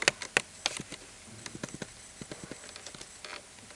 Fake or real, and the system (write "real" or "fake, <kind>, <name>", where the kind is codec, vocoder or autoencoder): real